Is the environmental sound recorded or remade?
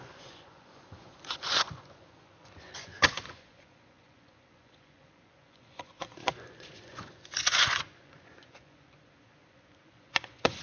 remade